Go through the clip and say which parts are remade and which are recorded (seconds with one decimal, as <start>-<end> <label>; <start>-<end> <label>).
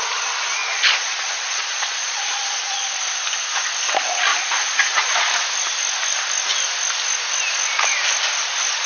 0.0-0.6 recorded; 0.6-2.9 remade; 2.9-4.3 recorded; 4.3-5.1 remade; 5.1-8.9 recorded